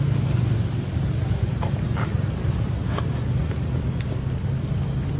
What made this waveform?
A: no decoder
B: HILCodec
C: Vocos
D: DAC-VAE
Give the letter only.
A